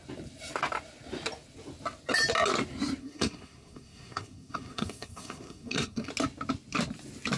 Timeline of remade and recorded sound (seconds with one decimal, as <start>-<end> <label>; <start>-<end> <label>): 0.0-3.0 recorded; 3.0-6.1 remade; 6.1-7.4 recorded